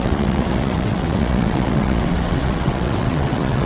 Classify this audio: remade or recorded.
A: remade